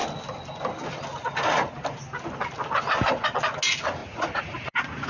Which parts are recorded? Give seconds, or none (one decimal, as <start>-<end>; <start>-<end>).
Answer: 0.0-4.0